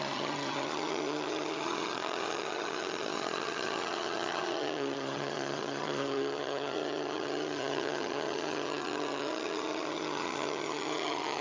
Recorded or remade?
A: remade